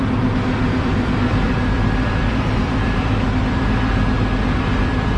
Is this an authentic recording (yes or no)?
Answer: no